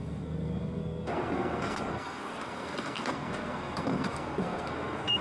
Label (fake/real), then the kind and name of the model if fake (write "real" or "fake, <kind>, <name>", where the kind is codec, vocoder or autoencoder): fake, codec, SNAC